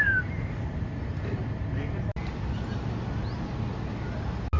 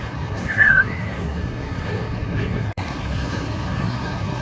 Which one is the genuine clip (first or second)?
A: first